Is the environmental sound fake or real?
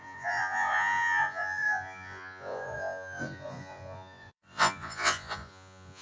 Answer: fake